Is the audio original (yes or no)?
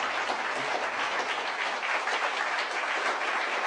yes